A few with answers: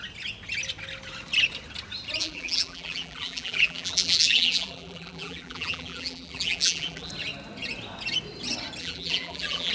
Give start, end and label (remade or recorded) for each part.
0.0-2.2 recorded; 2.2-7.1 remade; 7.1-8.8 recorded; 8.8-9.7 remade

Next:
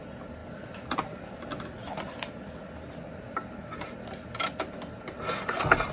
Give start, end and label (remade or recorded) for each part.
0.0-5.9 recorded

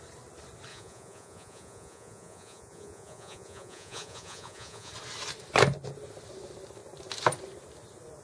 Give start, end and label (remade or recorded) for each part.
0.0-0.7 recorded; 0.7-4.9 remade; 4.9-8.2 recorded

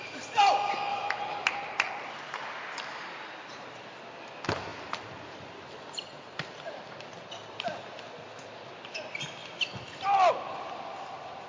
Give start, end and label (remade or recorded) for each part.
0.0-0.9 recorded; 0.9-2.4 remade; 2.4-11.5 recorded

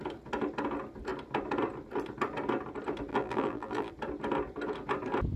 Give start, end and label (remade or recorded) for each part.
0.0-3.1 recorded; 3.1-3.9 remade; 3.9-5.4 recorded

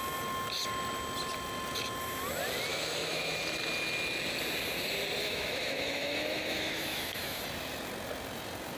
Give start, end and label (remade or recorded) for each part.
0.0-2.7 recorded; 2.7-3.4 remade; 3.4-5.2 recorded; 5.2-7.4 remade; 7.4-8.8 recorded

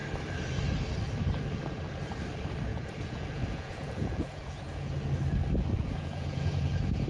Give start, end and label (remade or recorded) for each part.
0.0-2.7 recorded; 2.7-5.0 remade; 5.0-5.7 recorded; 5.7-7.1 remade